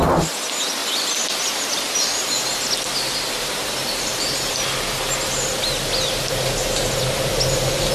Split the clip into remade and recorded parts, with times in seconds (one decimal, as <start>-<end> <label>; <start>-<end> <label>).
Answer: 0.0-7.9 recorded